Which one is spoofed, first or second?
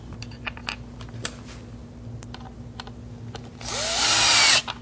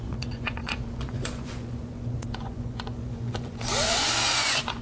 second